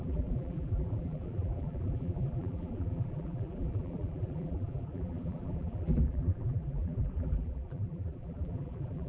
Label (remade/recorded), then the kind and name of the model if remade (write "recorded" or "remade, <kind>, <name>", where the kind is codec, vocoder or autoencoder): remade, vocoder, BigVGAN v2